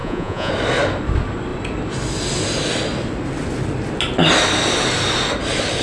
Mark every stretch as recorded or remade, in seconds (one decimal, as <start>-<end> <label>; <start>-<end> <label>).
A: 0.0-0.5 remade; 0.5-5.8 recorded